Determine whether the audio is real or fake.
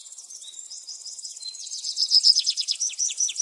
fake